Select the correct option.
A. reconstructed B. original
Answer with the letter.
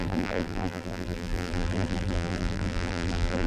A